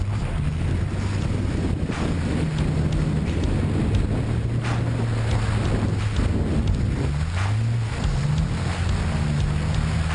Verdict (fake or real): real